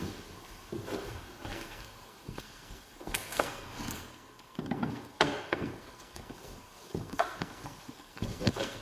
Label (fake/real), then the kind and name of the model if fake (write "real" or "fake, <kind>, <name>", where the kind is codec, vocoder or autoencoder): fake, codec, SNAC